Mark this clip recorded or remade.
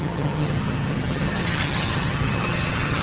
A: remade